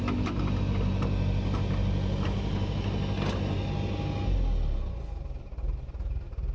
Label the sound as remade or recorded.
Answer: recorded